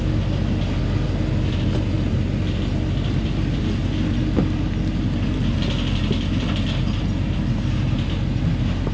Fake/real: real